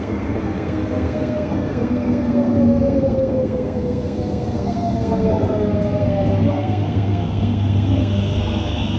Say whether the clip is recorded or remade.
remade